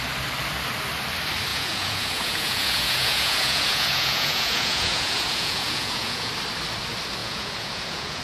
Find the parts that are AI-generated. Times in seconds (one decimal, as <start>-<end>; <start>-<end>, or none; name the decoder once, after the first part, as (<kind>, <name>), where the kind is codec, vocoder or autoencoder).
1.5-6.3 (vocoder, Vocos); 7.2-8.2